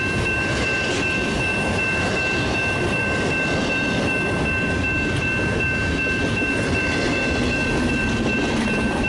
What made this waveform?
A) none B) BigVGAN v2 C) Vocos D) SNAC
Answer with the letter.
B